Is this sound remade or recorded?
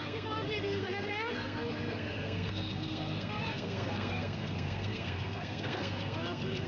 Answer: remade